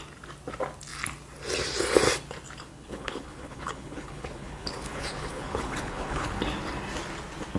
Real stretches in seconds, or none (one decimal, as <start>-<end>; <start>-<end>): 0.0-2.7; 6.4-7.6